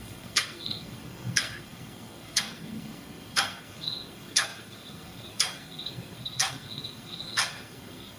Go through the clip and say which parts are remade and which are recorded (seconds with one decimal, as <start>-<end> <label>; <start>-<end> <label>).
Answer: 0.0-8.2 remade